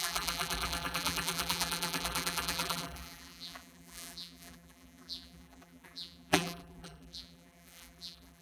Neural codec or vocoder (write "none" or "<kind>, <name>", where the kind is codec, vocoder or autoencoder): vocoder, BigVGAN v2